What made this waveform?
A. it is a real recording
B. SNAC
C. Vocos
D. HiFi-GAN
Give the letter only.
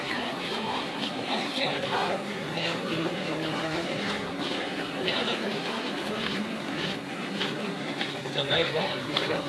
B